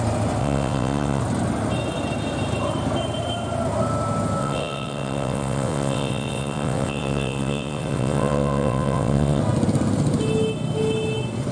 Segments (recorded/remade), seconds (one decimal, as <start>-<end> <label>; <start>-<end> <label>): 0.0-0.4 recorded; 0.4-1.2 remade; 1.2-4.4 recorded; 4.4-9.4 remade; 9.4-11.5 recorded